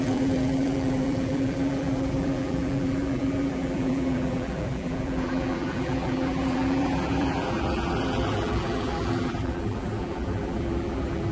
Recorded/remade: remade